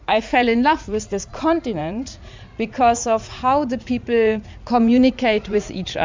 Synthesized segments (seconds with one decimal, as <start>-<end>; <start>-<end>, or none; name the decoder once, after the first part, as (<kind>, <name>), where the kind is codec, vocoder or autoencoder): 0.0-1.3 (vocoder, Vocos); 1.8-6.0